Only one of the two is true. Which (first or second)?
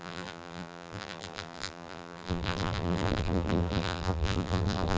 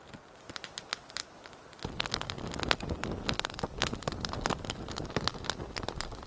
second